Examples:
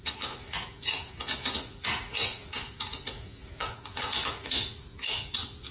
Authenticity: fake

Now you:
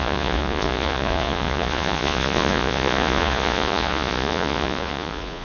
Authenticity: fake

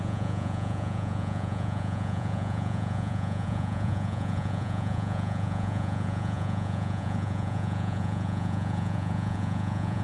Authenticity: fake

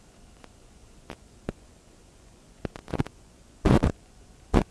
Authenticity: fake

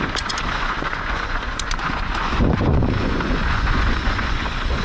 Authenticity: fake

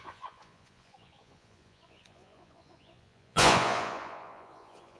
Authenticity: fake